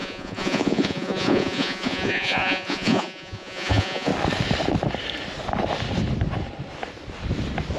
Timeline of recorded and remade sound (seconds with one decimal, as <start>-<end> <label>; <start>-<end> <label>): 0.0-4.1 remade; 4.1-7.8 recorded